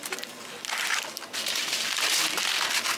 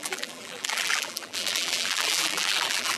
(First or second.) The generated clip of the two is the second